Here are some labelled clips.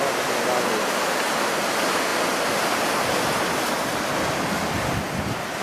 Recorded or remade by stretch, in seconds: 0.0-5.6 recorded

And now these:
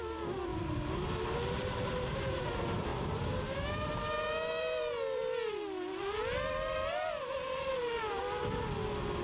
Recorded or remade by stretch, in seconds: 0.0-0.5 recorded; 0.5-2.4 remade; 2.4-2.9 recorded; 2.9-5.5 remade; 5.5-6.3 recorded; 6.3-8.2 remade; 8.2-9.2 recorded